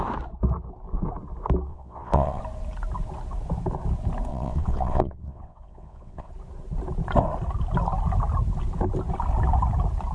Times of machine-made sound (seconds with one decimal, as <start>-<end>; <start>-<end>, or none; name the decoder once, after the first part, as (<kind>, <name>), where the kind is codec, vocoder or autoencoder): 1.7-2.4 (vocoder, WaveNeXt); 4.3-6.3